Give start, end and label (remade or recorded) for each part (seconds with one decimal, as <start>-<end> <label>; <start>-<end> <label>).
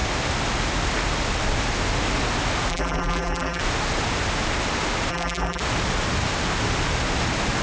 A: 0.0-2.7 recorded; 2.7-3.6 remade; 3.6-5.1 recorded; 5.1-5.6 remade; 5.6-7.6 recorded